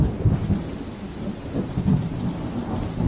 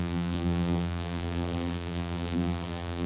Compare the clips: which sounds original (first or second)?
first